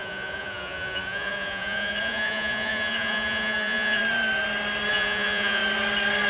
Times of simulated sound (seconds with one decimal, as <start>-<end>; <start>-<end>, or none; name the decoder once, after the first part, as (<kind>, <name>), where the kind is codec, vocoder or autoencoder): 0.0-4.0 (vocoder, Vocos); 4.9-5.6